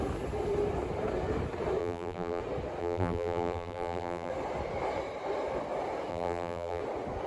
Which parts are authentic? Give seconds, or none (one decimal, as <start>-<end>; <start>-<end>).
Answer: 0.0-1.8; 2.4-2.8; 4.3-6.1; 6.8-7.3